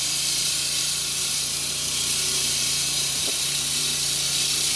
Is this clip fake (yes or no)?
yes